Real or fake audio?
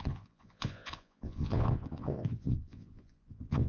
fake